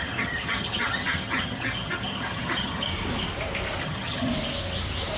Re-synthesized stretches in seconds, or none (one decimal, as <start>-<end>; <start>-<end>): 0.0-2.9; 3.8-4.3